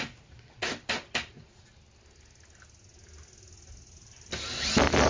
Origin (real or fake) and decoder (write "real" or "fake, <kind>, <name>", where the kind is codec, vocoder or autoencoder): real